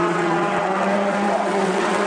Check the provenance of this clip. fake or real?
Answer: fake